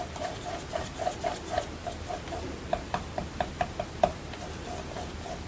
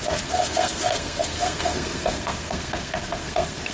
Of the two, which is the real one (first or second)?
first